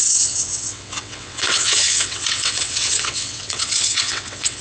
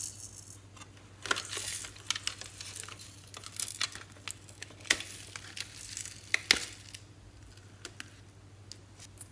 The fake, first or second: first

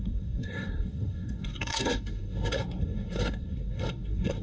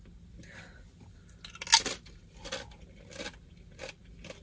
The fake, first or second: first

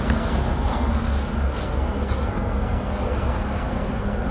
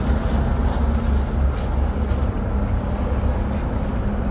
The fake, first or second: first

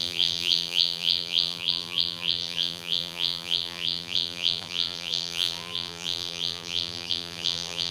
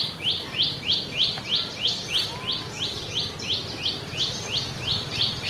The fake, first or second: first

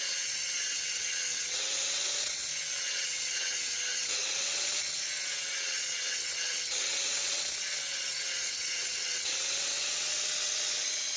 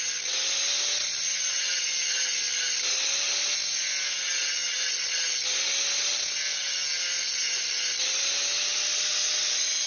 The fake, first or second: first